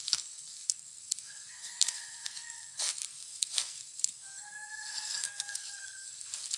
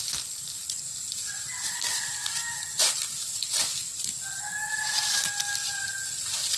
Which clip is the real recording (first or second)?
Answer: second